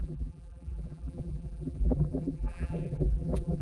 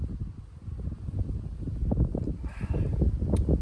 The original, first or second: second